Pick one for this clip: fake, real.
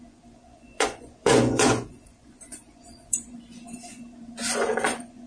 fake